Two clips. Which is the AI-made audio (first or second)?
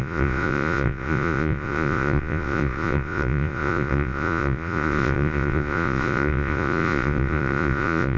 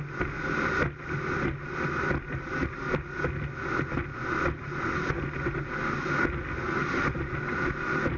first